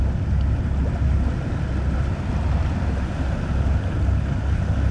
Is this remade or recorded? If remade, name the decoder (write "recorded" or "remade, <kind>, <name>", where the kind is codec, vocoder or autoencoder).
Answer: recorded